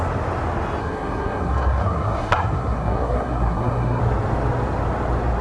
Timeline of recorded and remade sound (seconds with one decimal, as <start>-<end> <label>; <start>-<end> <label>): 0.0-0.8 recorded; 0.8-4.0 remade; 4.0-5.4 recorded